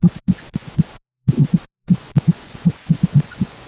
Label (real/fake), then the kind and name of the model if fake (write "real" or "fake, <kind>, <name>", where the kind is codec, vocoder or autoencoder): fake, vocoder, Vocos